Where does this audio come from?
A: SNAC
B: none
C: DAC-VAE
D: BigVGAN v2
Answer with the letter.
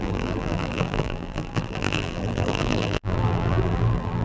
D